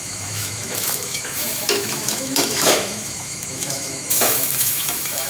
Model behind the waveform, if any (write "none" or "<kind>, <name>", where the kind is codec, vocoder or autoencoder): autoencoder, DAC-VAE